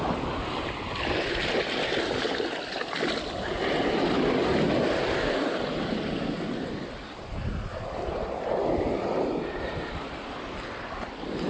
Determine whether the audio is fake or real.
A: real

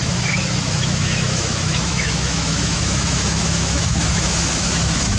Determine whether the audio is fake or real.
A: fake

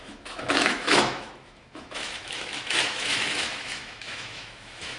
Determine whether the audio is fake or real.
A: fake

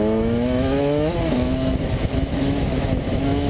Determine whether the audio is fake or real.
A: fake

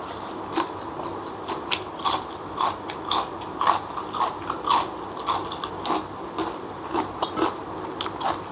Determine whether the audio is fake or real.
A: real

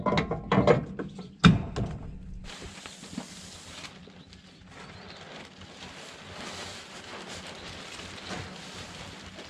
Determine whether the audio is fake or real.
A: real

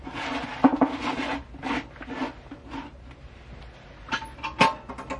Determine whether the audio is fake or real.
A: real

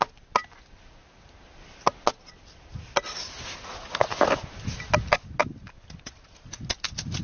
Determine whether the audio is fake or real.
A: real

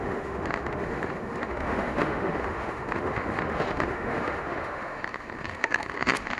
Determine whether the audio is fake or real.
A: fake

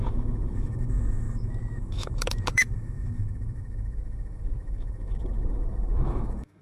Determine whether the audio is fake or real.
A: fake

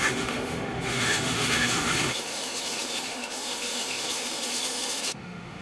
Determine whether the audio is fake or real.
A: fake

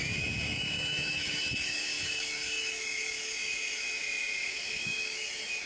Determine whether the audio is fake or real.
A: fake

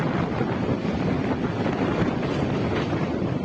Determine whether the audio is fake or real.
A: real